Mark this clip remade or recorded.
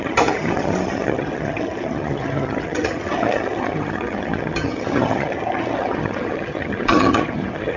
remade